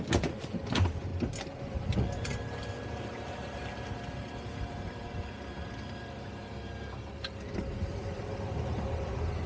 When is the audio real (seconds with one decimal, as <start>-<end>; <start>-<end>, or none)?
1.1-1.6